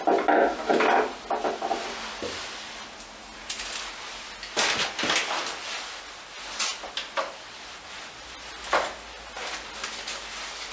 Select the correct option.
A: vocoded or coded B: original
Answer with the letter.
B